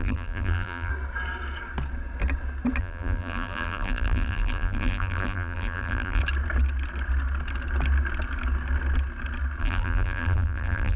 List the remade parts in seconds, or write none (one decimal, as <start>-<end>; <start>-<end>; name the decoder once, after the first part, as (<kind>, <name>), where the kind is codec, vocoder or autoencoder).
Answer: 0.0-0.9 (vocoder, BigVGAN v2); 2.8-6.2; 9.6-11.0